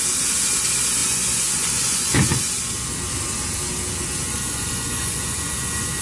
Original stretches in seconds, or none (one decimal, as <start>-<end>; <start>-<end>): 0.0-1.0; 2.4-4.3